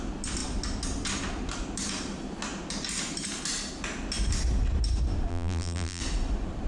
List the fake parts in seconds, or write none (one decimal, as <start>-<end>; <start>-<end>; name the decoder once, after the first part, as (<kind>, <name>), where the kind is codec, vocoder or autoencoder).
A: 5.3-6.0 (vocoder, BigVGAN v2)